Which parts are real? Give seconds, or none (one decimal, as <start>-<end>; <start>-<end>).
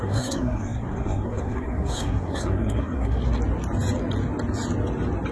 3.2-5.3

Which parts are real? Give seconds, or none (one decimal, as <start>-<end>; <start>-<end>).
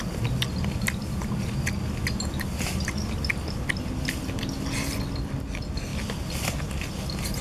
0.0-7.4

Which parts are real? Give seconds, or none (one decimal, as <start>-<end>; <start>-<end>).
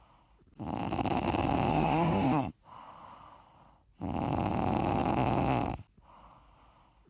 0.0-1.7; 2.5-7.1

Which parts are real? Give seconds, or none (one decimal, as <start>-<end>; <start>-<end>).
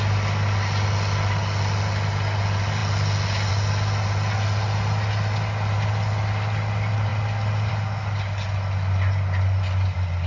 0.0-10.3